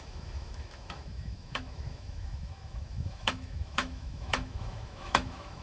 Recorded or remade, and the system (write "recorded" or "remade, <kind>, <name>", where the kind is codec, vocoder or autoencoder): remade, autoencoder, DAC-VAE